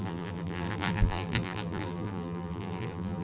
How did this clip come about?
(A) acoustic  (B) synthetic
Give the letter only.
B